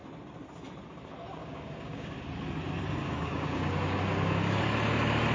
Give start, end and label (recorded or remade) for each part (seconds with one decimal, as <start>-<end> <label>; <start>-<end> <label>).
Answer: 0.0-1.4 recorded; 1.4-2.3 remade; 2.3-3.0 recorded; 3.0-4.6 remade; 4.6-5.3 recorded